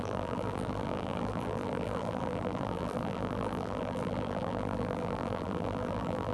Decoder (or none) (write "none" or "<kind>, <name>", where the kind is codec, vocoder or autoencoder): vocoder, BigVGAN v2